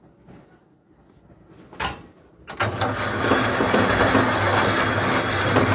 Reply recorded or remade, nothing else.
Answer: recorded